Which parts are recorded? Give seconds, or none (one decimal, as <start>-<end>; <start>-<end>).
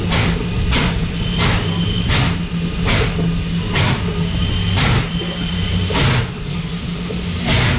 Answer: 0.0-7.8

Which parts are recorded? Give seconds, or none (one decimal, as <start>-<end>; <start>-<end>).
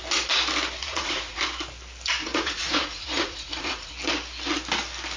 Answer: 0.0-0.8; 1.4-2.2; 3.9-5.2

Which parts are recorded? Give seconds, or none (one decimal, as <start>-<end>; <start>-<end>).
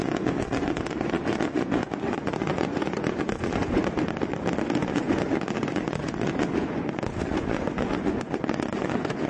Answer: 3.8-4.6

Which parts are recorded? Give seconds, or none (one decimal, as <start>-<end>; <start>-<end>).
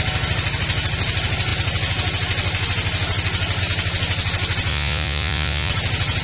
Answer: 0.0-4.7; 5.7-6.2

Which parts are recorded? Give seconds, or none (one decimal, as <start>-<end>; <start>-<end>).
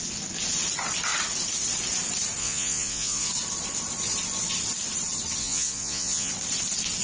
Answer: 0.0-2.4; 3.3-5.4; 6.3-7.0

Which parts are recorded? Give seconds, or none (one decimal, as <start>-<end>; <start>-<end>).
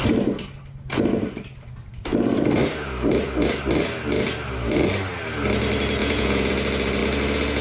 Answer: 0.0-6.0; 6.5-7.6